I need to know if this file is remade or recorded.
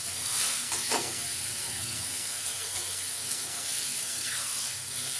remade